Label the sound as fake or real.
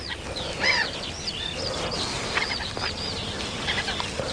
real